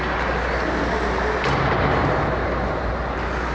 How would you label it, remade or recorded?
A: recorded